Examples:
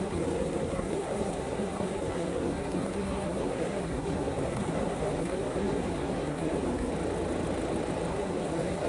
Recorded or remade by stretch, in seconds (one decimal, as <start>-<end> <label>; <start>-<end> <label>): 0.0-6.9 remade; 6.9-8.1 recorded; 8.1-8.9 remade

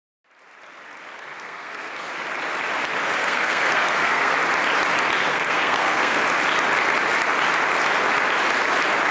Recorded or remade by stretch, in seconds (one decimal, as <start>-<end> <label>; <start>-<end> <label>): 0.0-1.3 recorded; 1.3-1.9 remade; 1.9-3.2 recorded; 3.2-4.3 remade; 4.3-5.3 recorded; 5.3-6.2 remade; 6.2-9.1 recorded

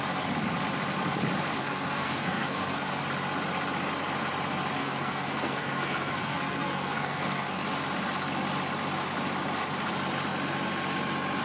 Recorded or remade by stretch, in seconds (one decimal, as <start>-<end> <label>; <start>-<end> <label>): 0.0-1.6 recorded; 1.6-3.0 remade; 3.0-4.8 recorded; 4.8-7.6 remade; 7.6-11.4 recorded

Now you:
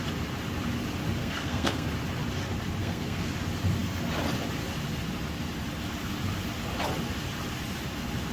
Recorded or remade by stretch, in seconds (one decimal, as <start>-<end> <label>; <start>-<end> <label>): 0.0-1.2 recorded; 1.2-1.9 remade; 1.9-2.8 recorded; 2.8-3.3 remade; 3.3-8.3 recorded

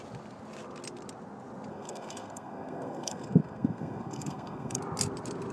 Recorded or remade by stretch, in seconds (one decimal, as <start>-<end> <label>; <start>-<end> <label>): 0.0-1.7 recorded; 1.7-4.8 remade; 4.8-5.5 recorded

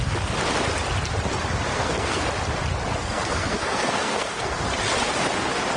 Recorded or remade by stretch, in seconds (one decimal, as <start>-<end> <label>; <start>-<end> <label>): 0.0-1.7 recorded; 1.7-2.2 remade; 2.2-3.0 recorded; 3.0-4.6 remade; 4.6-5.8 recorded

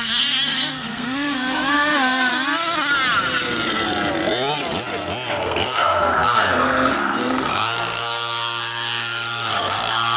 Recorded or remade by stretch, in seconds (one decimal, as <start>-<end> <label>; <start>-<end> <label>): 0.0-2.3 remade; 2.3-5.3 recorded; 5.3-10.2 remade